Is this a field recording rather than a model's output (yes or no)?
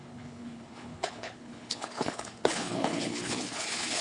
no